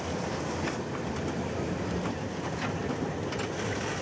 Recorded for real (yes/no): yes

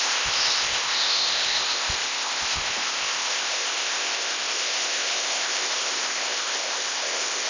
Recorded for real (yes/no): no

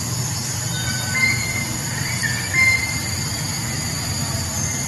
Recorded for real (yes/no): yes